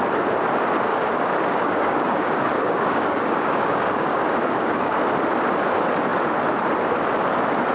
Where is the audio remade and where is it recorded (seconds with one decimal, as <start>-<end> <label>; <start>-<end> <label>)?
0.0-0.9 recorded; 0.9-5.0 remade; 5.0-7.7 recorded